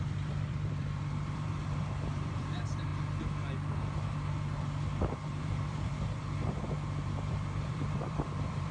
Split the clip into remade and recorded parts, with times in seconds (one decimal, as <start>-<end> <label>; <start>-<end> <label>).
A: 0.0-2.9 remade; 2.9-4.8 recorded; 4.8-8.7 remade